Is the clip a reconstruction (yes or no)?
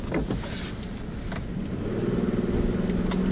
no